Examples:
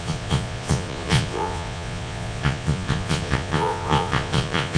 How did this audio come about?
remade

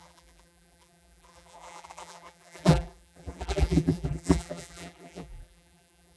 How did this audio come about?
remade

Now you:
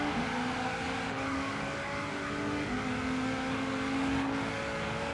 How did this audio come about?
remade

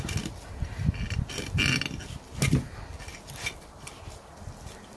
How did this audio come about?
recorded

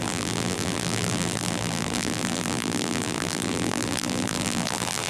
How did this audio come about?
remade